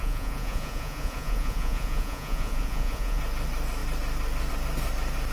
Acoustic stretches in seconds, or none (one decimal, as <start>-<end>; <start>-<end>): 3.2-5.3